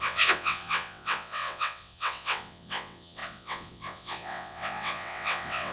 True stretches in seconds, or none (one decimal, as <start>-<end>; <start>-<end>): none